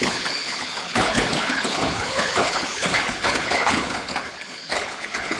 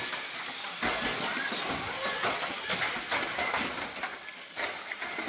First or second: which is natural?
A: second